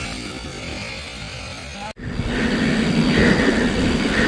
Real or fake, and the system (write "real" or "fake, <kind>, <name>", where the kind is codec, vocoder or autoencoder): real